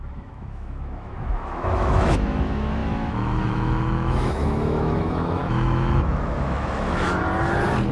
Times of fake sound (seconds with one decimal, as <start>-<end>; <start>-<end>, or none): 0.0-7.2